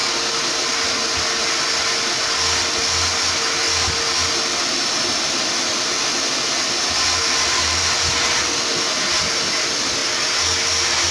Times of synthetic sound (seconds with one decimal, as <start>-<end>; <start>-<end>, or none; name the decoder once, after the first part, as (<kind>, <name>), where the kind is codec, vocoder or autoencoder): none

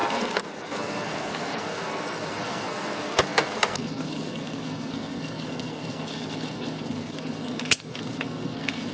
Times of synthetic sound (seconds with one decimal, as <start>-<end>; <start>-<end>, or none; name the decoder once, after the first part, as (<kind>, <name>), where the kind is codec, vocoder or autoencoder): 0.0-8.9 (codec, SNAC)

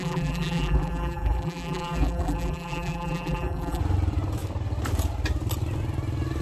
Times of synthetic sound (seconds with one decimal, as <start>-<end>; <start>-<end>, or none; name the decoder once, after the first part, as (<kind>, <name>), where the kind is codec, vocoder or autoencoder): 0.0-3.8 (vocoder, BigVGAN v2)

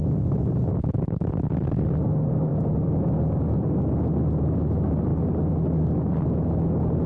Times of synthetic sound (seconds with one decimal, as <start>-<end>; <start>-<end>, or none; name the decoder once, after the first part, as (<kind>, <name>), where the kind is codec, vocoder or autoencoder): none